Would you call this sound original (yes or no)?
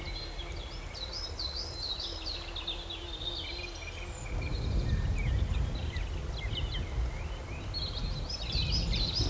yes